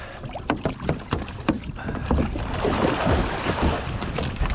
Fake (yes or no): no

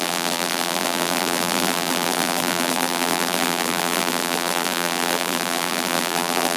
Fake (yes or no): yes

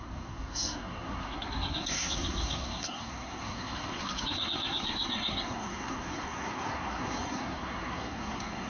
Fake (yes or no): yes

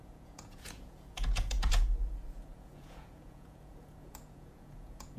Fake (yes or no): yes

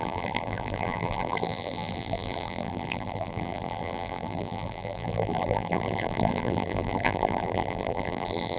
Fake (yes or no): yes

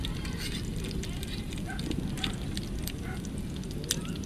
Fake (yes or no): no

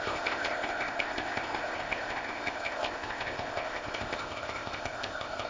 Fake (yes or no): yes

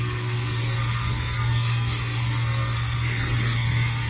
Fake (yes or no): yes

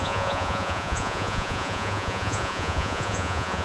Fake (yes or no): yes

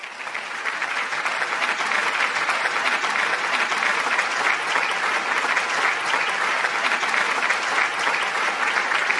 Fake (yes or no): no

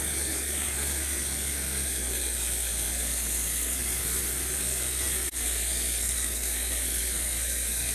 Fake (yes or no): yes